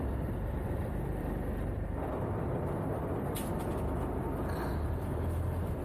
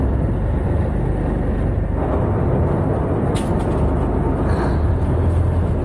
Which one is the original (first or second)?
second